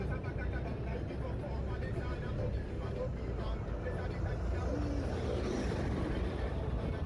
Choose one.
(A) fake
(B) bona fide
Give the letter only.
B